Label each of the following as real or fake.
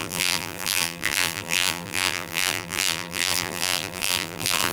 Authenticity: fake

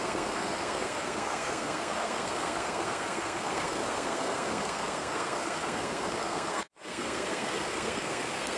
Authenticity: fake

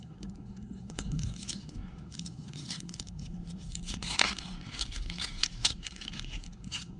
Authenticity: fake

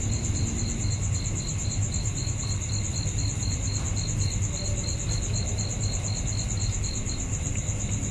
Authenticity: real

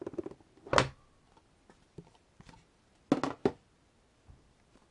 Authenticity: real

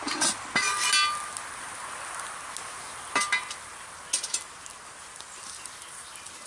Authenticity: real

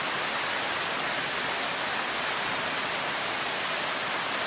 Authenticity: real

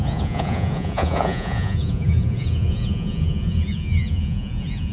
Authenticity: fake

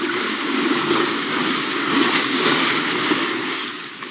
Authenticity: fake